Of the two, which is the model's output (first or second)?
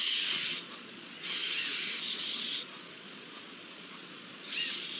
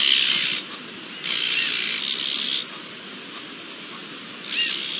first